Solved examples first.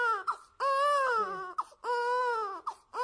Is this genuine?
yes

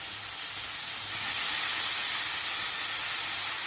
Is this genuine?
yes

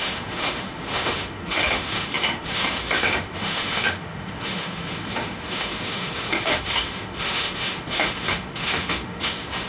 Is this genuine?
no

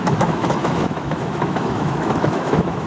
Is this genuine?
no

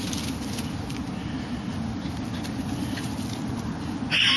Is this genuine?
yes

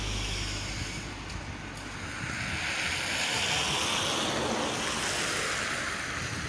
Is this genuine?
yes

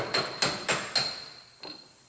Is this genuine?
yes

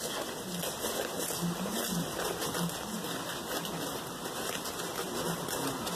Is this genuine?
yes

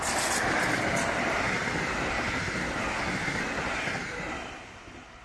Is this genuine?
yes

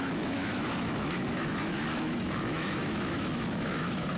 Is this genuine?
no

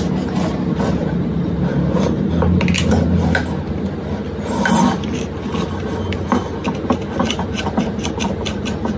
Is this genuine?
yes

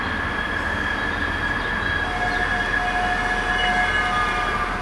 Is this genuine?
yes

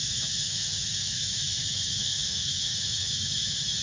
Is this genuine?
no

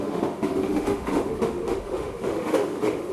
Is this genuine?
no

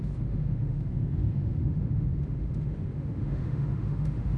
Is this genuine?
no